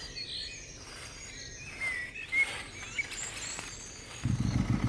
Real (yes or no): yes